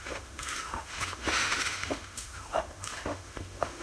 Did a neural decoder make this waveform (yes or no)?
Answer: yes